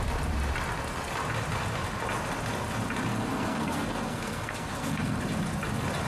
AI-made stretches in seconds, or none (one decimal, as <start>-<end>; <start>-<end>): 3.1-5.2